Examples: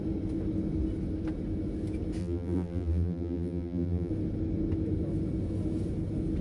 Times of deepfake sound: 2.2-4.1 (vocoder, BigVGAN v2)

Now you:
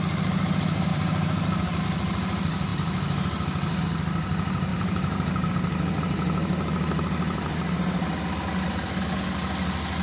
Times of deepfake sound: 0.9-1.8 (vocoder, BigVGAN v2); 4.7-5.5